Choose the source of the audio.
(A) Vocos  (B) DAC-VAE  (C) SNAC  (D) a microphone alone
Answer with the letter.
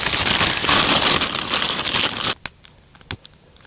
D